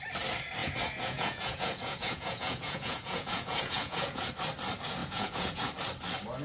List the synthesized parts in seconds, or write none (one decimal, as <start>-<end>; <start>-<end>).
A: 0.6-4.3; 5.0-5.6